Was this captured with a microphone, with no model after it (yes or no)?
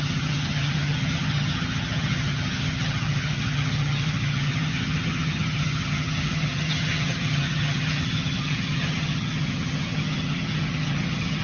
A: no